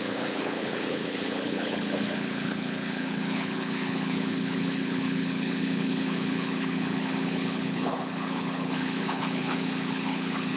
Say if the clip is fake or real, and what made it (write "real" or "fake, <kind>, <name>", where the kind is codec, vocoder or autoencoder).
fake, codec, HILCodec